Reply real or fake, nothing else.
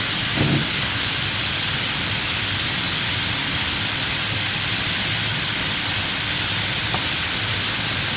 real